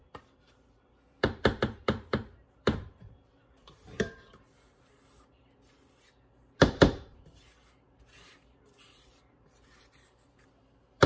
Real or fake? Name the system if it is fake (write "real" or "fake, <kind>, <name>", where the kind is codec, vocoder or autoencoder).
fake, vocoder, BigVGAN v2